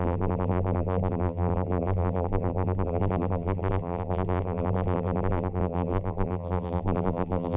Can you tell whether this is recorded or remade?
remade